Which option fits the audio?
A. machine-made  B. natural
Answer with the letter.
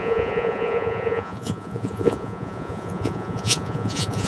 A